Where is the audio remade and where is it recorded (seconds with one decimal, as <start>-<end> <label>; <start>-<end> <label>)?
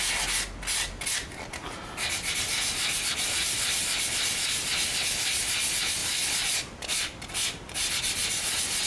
0.0-3.4 recorded; 3.4-4.4 remade; 4.4-6.0 recorded; 6.0-7.9 remade; 7.9-8.9 recorded